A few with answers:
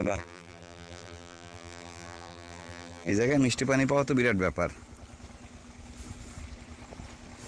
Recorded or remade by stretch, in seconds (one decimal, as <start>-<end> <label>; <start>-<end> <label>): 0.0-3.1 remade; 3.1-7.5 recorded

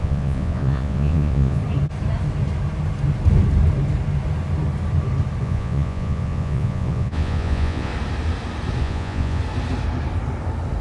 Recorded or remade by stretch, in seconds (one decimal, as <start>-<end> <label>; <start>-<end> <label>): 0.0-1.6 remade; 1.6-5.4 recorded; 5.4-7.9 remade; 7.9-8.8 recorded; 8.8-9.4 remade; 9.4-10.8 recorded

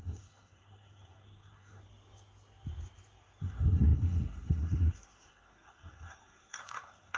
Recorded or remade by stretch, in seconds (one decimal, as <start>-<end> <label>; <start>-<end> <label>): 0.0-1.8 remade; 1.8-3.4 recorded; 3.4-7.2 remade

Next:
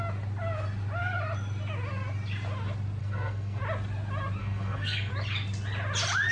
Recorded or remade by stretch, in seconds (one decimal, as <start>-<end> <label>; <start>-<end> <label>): 0.0-3.0 recorded; 3.0-3.6 remade; 3.6-4.4 recorded; 4.4-5.1 remade; 5.1-6.3 recorded

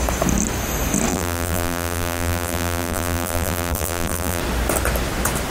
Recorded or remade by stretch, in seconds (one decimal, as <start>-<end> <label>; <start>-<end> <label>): 0.0-1.1 recorded; 1.1-4.4 remade; 4.4-5.5 recorded

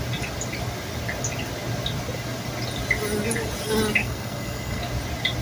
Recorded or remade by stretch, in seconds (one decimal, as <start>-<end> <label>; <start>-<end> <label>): 0.0-4.0 recorded; 4.0-4.8 remade; 4.8-5.4 recorded

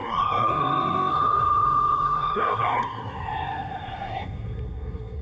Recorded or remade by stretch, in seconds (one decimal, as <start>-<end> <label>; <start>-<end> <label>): 0.0-5.2 remade